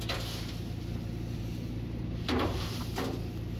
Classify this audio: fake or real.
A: real